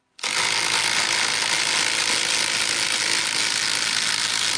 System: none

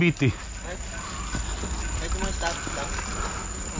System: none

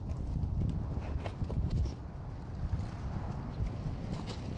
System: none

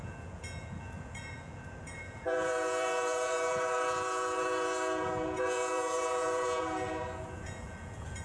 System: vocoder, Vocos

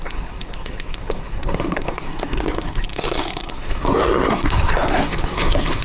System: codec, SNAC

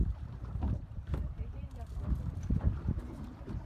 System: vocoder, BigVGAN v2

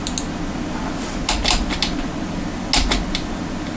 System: none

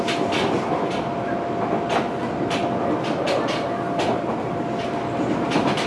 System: none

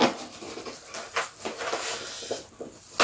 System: none